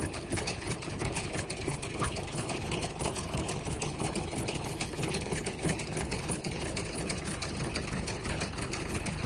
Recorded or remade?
remade